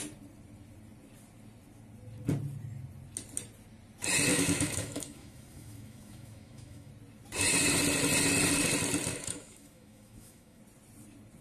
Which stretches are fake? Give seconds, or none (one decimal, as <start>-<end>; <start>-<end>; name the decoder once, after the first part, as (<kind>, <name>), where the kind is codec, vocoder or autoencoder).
4.3-6.9 (autoencoder, DAC-VAE); 9.1-10.6